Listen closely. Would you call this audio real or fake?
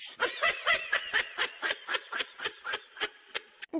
fake